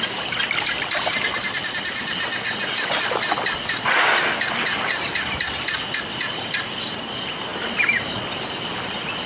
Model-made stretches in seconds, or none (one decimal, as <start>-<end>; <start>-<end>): none